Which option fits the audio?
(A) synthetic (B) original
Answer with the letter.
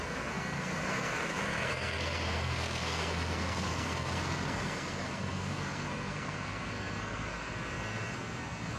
A